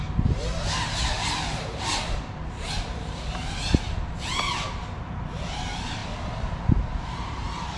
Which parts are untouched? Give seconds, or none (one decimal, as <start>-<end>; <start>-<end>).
0.5-5.2; 6.0-6.6